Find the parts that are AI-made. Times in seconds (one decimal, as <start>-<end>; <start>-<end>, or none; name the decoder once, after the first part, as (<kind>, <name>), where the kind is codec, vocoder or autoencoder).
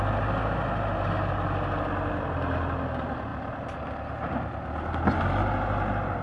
none